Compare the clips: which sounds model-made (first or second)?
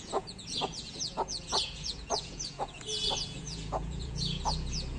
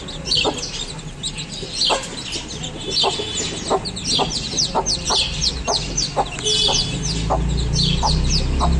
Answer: first